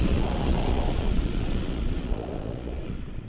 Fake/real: fake